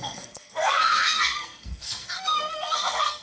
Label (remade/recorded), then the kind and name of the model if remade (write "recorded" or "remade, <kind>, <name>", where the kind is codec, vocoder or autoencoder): remade, codec, SNAC